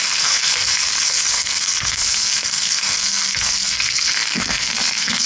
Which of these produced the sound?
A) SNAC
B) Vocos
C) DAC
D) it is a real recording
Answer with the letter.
A